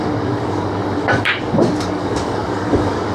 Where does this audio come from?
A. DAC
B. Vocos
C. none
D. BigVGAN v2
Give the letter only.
A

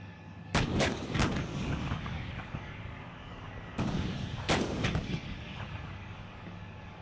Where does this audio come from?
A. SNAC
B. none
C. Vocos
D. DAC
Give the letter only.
D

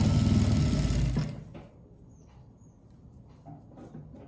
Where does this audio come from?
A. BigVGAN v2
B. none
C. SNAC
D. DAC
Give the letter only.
B